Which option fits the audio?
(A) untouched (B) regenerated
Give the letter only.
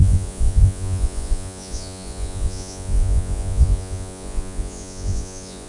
B